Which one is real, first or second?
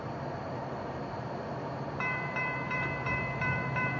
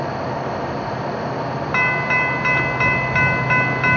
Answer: second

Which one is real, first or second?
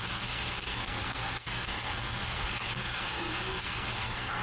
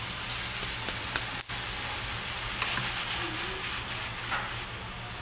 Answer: second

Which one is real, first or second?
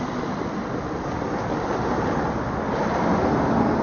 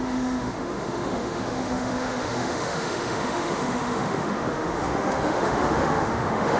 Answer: first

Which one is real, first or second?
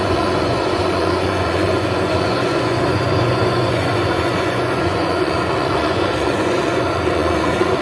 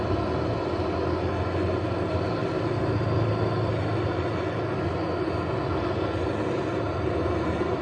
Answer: second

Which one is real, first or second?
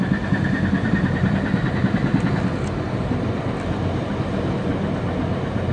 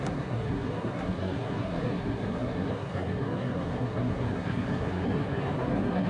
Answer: first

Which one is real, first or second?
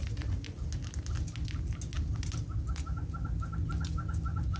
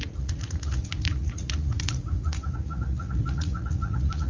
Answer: first